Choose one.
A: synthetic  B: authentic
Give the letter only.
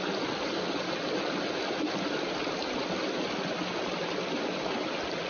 B